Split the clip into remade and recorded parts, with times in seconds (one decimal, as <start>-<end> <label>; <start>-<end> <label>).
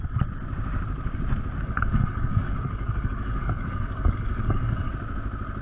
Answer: 0.0-1.6 recorded; 1.6-4.9 remade; 4.9-5.6 recorded